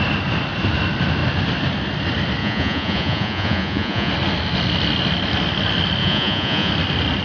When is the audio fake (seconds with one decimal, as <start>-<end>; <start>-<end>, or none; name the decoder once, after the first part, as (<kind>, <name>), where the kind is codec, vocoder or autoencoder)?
2.4-4.1 (vocoder, Vocos); 6.0-6.7